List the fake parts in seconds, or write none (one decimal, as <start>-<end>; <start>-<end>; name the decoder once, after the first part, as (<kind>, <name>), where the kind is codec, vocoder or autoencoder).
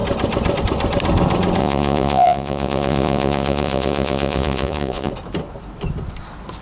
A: 1.6-5.1 (vocoder, Vocos)